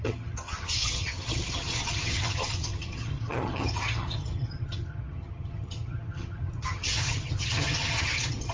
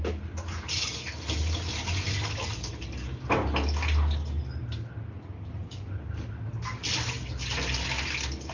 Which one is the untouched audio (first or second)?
second